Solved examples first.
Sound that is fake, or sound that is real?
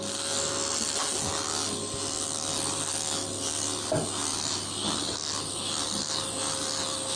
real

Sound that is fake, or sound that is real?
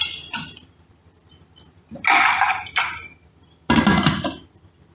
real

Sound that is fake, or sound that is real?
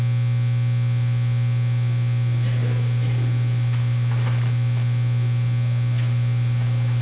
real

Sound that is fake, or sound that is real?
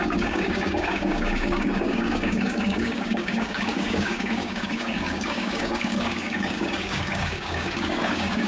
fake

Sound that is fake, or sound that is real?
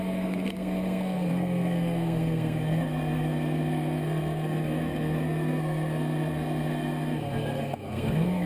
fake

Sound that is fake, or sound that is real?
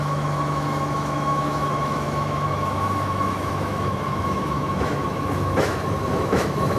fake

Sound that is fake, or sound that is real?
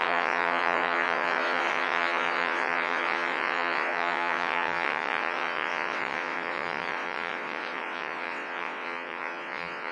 fake